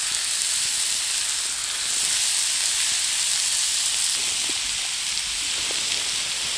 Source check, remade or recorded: recorded